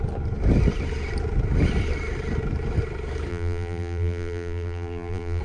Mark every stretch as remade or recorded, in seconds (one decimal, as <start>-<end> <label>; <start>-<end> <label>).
0.0-3.3 recorded; 3.3-5.4 remade